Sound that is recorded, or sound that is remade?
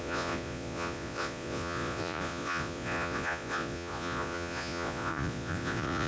remade